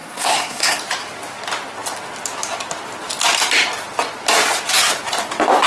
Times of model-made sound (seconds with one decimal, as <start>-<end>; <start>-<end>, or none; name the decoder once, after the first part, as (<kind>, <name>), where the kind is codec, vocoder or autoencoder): 0.0-0.8 (codec, SNAC)